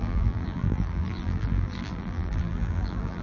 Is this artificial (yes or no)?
yes